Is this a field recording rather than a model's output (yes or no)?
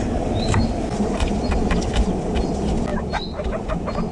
yes